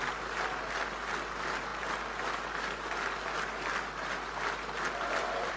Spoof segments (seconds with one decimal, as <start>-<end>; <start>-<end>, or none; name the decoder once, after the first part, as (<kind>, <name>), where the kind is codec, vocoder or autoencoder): none